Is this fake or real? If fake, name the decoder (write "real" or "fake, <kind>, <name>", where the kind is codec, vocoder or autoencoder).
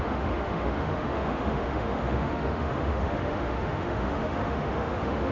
fake, autoencoder, DAC-VAE